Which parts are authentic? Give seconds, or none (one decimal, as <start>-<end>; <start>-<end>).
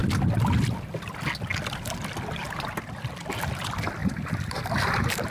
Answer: 0.0-4.0; 4.7-5.3